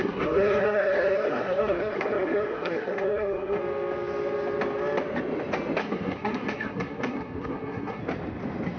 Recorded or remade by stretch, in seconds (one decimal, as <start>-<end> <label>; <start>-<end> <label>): 0.0-3.6 remade; 3.6-5.8 recorded; 5.8-8.0 remade; 8.0-8.8 recorded